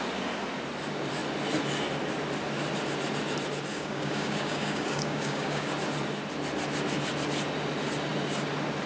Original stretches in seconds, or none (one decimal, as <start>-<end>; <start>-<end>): 0.0-3.7; 5.7-8.9